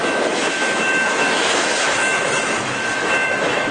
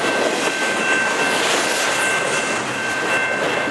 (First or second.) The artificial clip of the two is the first